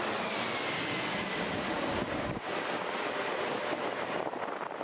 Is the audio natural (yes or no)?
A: yes